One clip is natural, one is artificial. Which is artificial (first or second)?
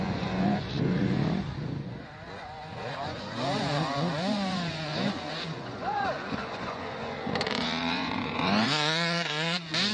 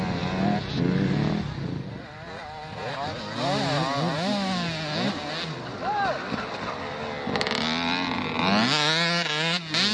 first